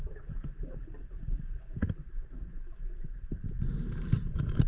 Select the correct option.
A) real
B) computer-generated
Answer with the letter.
B